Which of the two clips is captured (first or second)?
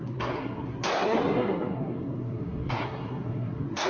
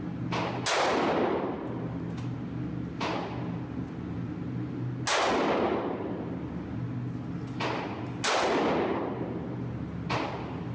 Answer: second